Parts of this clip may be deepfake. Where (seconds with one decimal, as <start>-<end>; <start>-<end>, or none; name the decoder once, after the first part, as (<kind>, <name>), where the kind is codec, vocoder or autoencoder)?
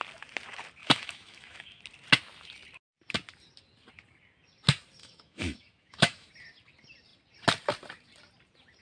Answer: 0.8-1.8 (autoencoder, DAC-VAE); 5.0-6.3